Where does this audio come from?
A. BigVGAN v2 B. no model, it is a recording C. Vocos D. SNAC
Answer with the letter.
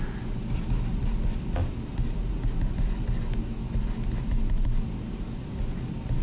B